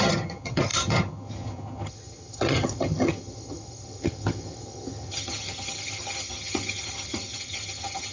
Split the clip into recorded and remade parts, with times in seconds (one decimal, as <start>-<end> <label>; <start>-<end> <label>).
0.0-8.1 remade